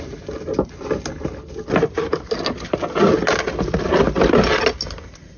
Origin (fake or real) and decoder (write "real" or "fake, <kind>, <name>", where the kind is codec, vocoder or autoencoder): real